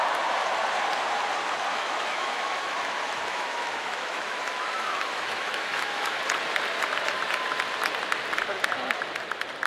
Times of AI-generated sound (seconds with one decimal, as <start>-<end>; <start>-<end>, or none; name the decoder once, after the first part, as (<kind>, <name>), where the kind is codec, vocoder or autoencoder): 1.7-6.2 (autoencoder, DAC-VAE)